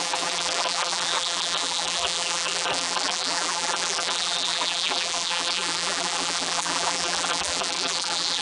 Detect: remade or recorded remade